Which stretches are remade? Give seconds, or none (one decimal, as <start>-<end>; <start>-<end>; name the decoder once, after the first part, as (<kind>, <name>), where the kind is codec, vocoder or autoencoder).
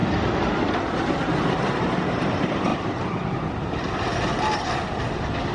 none